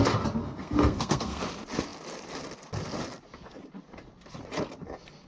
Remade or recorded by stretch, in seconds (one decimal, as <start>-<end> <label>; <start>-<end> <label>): 0.0-0.4 recorded; 0.4-1.4 remade; 1.4-5.3 recorded